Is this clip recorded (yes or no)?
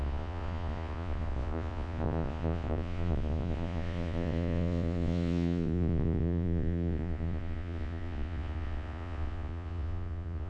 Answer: no